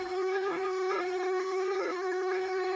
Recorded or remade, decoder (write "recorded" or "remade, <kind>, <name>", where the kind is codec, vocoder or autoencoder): remade, codec, SNAC